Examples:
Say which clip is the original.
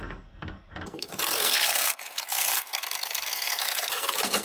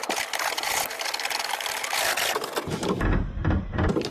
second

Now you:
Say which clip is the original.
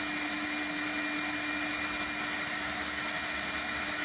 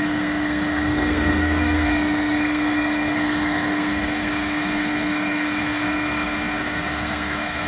first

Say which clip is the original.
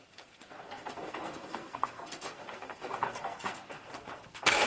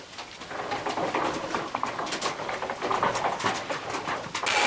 second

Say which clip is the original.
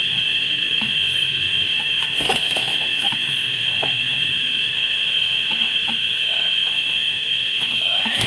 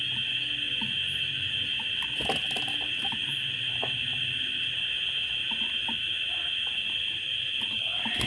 second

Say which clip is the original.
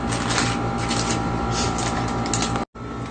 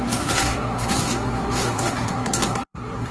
first